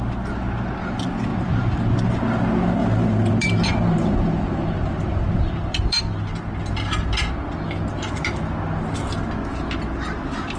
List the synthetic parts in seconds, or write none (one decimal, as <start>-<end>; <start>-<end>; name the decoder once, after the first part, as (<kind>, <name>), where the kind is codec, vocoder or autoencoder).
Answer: 1.3-1.8 (vocoder, BigVGAN v2); 2.8-6.0